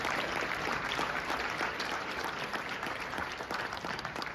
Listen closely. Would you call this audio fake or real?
fake